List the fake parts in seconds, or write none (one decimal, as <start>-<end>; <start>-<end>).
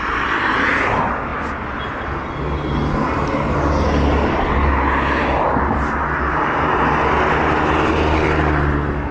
none